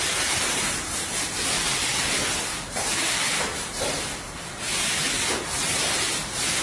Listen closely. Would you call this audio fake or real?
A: real